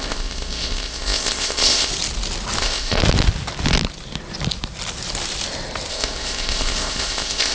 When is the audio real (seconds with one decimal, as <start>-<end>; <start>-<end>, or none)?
1.9-2.6; 3.0-5.9